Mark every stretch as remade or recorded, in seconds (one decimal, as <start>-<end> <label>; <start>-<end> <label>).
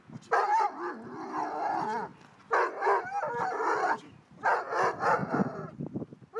0.0-6.4 recorded